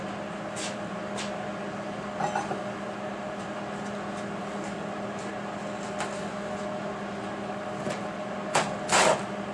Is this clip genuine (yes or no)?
yes